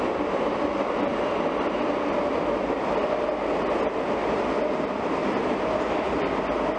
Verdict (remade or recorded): recorded